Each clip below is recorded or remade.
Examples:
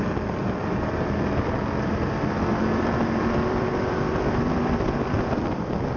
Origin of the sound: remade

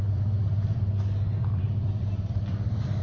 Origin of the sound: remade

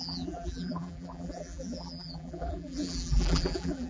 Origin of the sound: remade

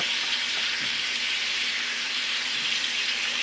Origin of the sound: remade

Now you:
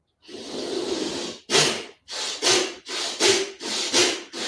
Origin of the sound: remade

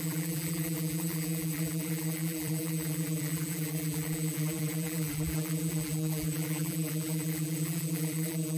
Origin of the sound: remade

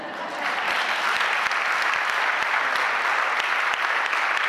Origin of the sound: recorded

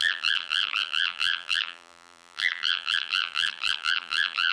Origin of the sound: remade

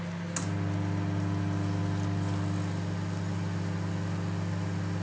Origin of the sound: recorded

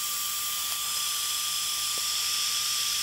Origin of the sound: remade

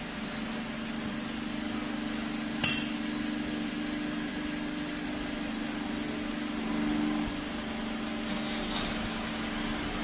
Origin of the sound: recorded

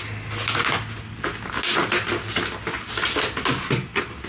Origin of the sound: recorded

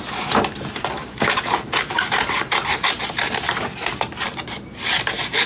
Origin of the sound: remade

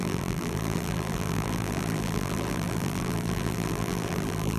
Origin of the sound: remade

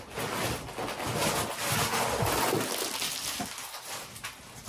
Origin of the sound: recorded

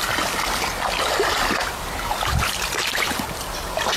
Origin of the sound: remade